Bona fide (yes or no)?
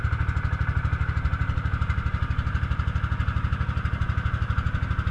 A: yes